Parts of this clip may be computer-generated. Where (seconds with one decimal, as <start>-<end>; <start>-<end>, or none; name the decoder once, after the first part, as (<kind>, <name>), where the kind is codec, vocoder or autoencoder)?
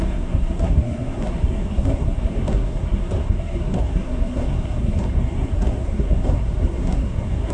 0.0-7.5 (codec, SNAC)